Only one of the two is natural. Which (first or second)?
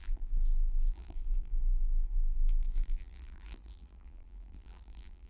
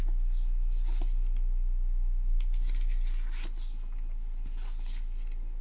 second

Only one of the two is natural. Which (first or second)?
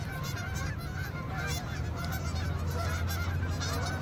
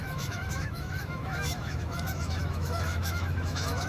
first